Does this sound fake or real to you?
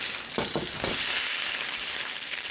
real